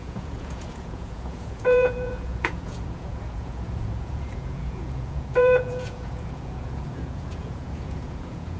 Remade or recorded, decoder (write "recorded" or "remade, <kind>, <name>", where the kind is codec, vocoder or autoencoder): remade, vocoder, Vocos